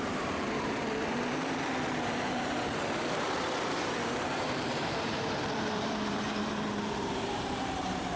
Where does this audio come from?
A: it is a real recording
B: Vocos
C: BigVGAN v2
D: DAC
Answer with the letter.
C